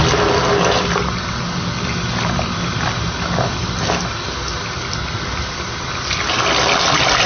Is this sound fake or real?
real